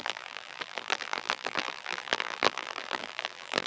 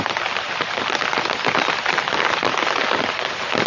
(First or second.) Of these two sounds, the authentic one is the second